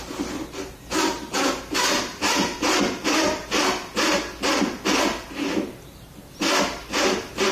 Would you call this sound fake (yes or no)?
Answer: no